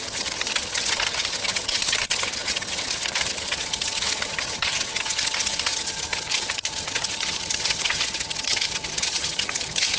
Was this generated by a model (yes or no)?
yes